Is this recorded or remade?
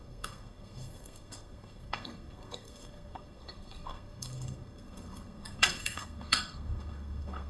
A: remade